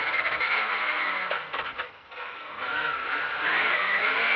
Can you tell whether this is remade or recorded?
remade